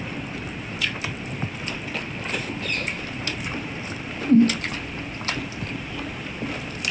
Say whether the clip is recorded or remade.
remade